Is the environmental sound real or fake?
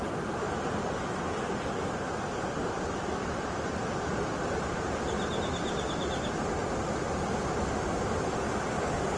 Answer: real